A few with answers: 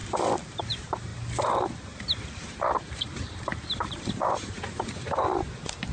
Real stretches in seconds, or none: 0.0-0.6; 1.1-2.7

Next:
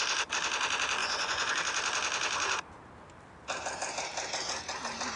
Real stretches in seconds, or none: 0.0-1.0; 1.5-5.2

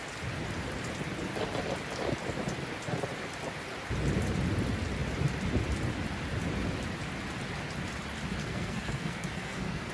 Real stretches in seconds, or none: 0.0-8.4

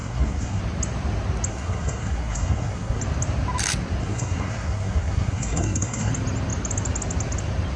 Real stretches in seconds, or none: 0.6-1.5; 3.0-4.0; 6.1-7.8